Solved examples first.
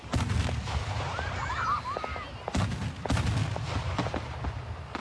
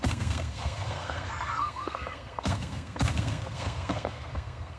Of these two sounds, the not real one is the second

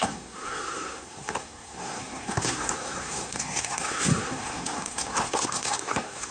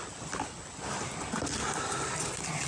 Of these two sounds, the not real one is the first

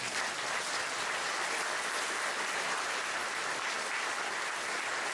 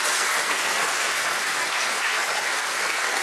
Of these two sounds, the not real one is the second